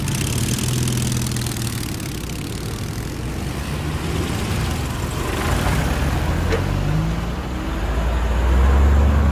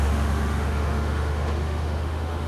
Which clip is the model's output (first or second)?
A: second